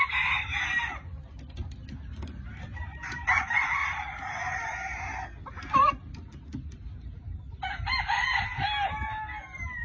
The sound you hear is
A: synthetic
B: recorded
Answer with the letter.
B